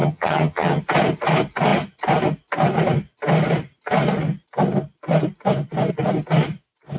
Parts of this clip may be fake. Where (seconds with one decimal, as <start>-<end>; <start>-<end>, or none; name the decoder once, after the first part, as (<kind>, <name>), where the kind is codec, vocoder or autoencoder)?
0.0-0.8 (vocoder, HiFi-GAN)

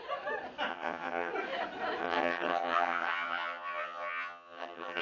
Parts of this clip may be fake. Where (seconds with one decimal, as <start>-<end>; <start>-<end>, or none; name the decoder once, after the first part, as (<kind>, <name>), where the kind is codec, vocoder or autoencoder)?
0.7-1.3 (vocoder, HiFi-GAN); 2.0-5.0

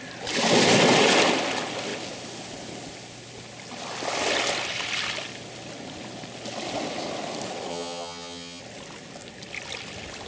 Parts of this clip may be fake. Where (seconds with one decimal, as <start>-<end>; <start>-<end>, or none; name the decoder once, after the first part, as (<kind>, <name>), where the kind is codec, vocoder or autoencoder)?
7.7-8.6 (vocoder, HiFi-GAN)